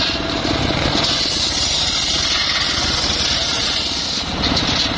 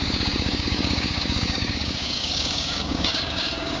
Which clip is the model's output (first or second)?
second